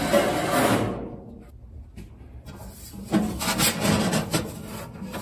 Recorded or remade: recorded